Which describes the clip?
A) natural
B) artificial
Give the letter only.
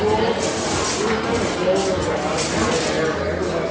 A